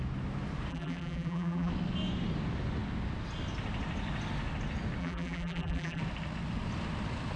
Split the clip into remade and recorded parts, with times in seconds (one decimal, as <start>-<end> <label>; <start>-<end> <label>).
0.0-0.7 recorded; 0.7-1.7 remade; 1.7-5.0 recorded; 5.0-6.0 remade; 6.0-7.4 recorded